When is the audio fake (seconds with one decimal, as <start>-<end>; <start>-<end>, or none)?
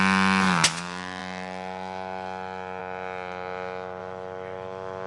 4.0-5.1